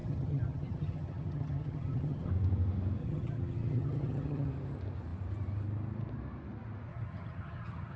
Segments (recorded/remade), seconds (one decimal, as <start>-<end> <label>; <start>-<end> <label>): 0.0-2.3 remade; 2.3-3.0 recorded; 3.0-4.5 remade; 4.5-6.9 recorded; 6.9-8.0 remade